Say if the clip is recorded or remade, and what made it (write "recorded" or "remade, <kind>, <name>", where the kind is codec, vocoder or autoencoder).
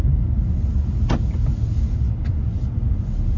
recorded